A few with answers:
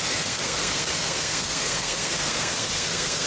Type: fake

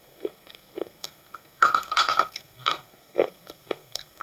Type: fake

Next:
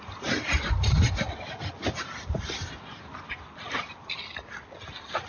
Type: real